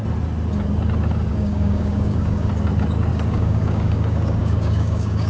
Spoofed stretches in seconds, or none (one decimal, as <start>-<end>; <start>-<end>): 1.3-2.5; 3.1-5.3